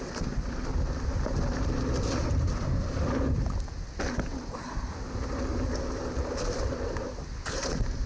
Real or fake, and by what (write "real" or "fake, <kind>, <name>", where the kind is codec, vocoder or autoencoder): real